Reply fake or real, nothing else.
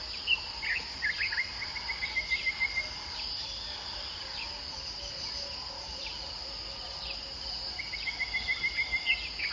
real